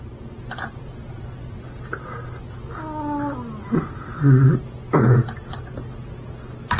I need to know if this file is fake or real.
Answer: real